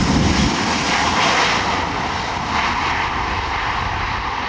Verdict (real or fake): real